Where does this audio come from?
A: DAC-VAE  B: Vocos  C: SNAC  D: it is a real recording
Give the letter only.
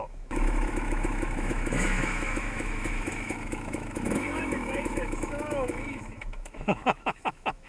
A